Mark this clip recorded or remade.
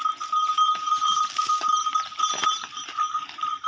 recorded